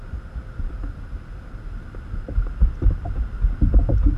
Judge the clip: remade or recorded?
recorded